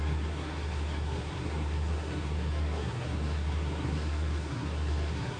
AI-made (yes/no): yes